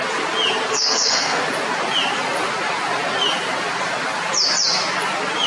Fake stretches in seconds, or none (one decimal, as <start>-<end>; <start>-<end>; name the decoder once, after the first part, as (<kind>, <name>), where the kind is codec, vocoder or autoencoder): 0.7-1.4 (codec, SNAC)